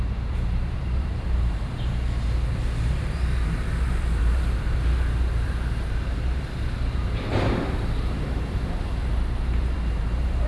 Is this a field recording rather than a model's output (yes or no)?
no